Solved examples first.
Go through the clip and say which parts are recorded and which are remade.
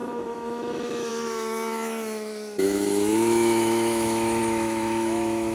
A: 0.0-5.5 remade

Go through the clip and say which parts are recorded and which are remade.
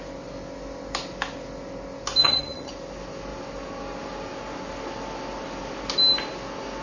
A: 0.0-2.2 recorded; 2.2-2.7 remade; 2.7-6.8 recorded